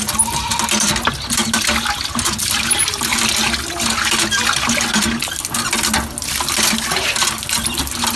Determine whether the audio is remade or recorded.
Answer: recorded